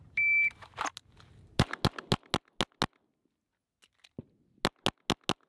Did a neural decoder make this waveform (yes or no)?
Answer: no